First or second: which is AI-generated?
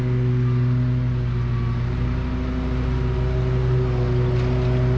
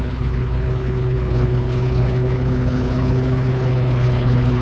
second